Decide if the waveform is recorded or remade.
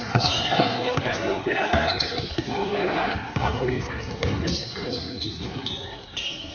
remade